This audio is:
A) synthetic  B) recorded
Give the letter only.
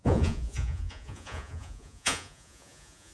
A